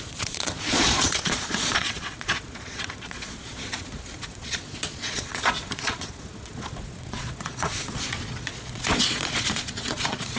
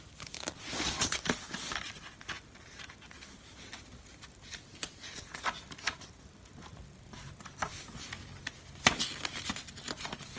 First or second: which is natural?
second